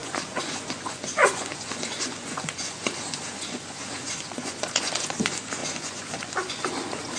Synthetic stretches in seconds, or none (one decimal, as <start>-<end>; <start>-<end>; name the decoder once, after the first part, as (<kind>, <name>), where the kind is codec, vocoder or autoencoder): 0.0-7.2 (vocoder, Vocos)